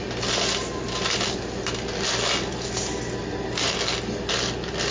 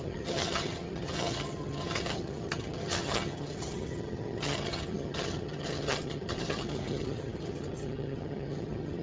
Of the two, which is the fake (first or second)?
second